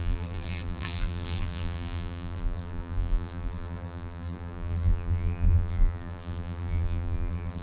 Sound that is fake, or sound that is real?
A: fake